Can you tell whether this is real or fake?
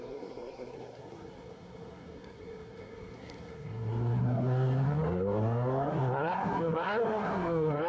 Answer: fake